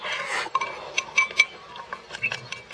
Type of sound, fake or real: real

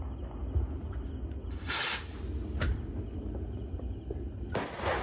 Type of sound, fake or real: real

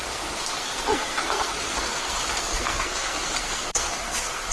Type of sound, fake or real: fake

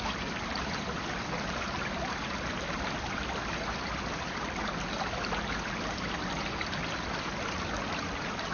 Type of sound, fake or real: real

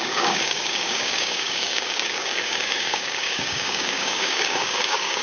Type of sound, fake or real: fake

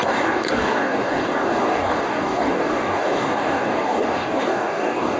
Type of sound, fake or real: fake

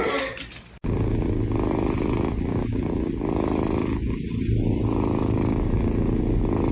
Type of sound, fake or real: real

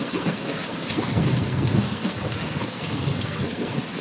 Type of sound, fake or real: fake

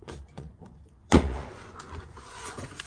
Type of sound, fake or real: fake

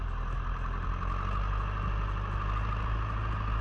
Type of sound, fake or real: real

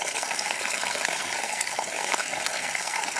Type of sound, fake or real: fake